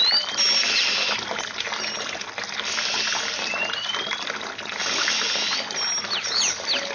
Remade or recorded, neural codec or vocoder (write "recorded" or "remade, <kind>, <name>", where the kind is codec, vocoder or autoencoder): recorded